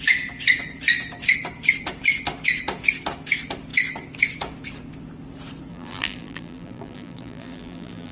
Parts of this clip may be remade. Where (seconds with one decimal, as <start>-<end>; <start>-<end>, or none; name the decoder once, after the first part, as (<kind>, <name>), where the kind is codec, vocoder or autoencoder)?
5.7-8.1 (vocoder, BigVGAN v2)